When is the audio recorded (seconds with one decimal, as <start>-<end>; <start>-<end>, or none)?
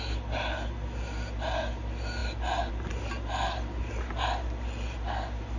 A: 0.0-5.6